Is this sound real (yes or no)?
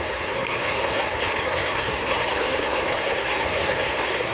no